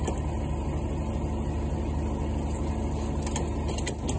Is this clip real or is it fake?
real